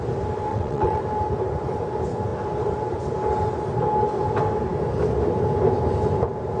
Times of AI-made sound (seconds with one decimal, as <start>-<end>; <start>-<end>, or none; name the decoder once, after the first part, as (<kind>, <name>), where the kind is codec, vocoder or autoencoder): 0.5-1.0 (vocoder, WaveNeXt)

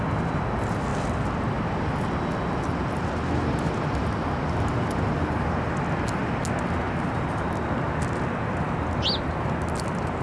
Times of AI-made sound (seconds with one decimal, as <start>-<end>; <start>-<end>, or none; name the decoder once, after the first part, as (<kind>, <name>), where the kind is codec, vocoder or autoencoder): none